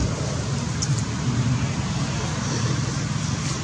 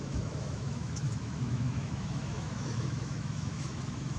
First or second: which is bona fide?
first